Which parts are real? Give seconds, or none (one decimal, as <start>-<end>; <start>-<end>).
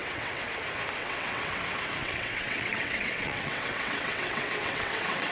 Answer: 0.6-1.0; 1.6-2.0